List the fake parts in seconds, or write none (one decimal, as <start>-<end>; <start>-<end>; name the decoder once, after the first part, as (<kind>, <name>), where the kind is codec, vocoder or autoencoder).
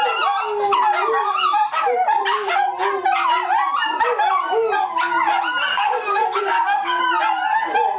5.7-7.0 (codec, SNAC)